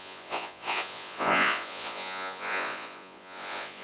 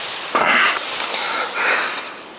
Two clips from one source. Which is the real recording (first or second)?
second